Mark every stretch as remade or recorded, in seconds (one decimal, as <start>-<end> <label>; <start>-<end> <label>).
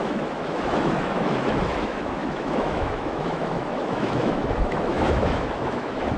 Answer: 0.0-6.2 remade